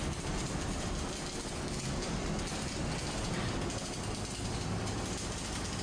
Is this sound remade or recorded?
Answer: recorded